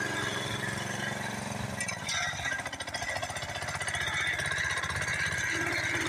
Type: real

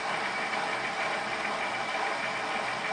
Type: real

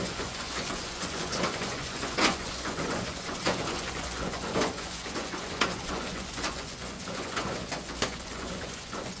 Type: fake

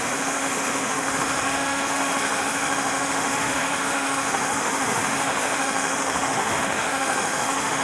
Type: fake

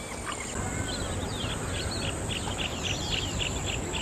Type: real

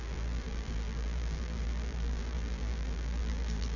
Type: fake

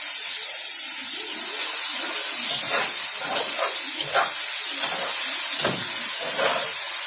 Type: real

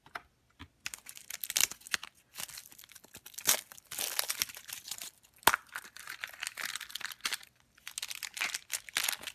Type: real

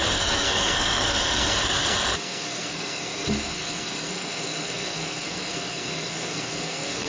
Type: fake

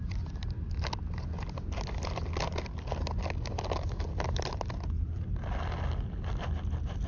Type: real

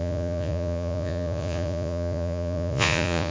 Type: fake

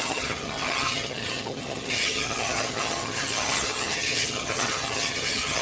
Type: fake